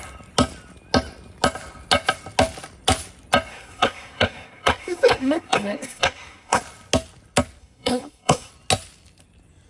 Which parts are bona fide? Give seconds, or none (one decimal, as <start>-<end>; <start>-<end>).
0.0-3.5; 6.6-7.6; 8.5-9.7